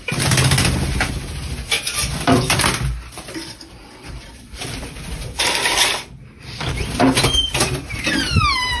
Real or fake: fake